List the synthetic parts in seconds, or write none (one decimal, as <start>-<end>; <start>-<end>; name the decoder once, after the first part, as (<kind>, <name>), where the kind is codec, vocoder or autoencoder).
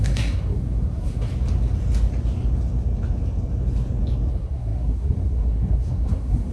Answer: 0.0-1.3 (codec, SNAC); 4.3-6.5